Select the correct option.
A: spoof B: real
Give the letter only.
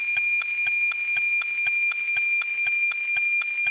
B